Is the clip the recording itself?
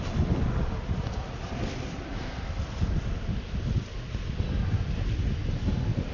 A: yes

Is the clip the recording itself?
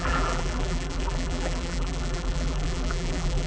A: no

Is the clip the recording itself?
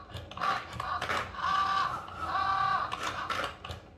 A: yes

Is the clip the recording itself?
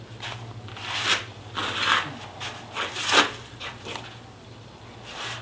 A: yes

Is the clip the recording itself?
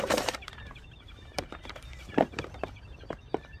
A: no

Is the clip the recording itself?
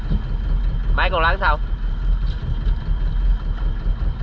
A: yes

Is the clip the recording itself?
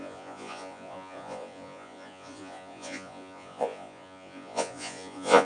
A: no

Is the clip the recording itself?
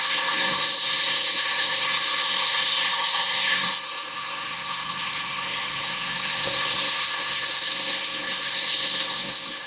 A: no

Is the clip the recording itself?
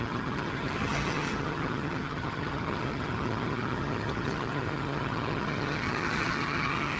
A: no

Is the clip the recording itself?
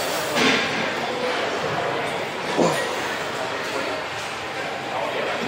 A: yes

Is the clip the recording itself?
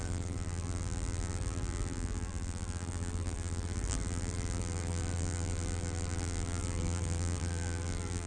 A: no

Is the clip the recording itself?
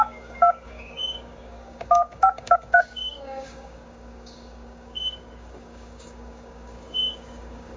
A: no